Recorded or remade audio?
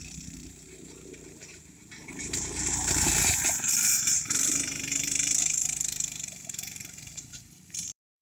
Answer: remade